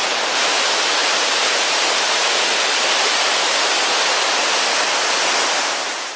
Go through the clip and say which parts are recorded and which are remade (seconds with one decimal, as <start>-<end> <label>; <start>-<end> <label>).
0.0-6.2 recorded